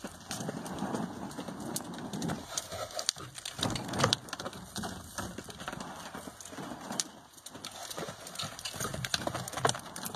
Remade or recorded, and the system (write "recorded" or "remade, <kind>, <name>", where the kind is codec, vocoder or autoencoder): recorded